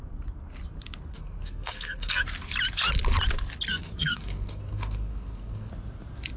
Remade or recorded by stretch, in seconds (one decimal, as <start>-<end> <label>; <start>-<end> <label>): 0.0-1.1 recorded; 1.1-2.2 remade; 2.2-3.7 recorded; 3.7-5.7 remade; 5.7-6.4 recorded